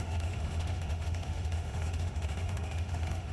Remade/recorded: remade